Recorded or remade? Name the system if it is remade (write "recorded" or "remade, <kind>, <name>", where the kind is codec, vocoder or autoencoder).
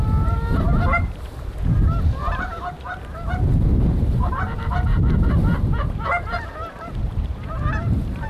remade, vocoder, BigVGAN v2